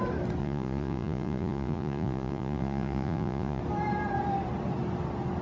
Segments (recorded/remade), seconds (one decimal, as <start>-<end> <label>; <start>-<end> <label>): 0.0-0.4 recorded; 0.4-3.6 remade; 3.6-5.4 recorded